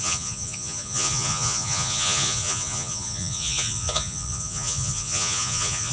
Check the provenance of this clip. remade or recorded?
remade